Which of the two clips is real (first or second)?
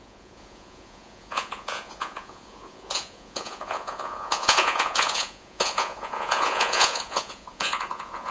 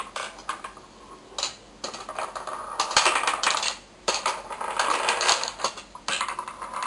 second